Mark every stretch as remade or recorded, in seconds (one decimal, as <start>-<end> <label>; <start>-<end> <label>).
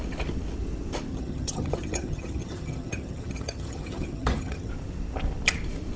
0.0-1.1 recorded; 1.1-4.7 remade; 4.7-6.0 recorded